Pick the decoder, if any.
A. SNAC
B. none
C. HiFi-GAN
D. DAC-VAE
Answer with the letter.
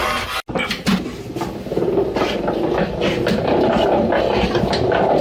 B